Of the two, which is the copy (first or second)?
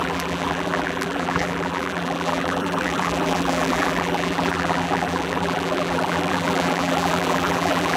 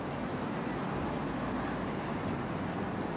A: first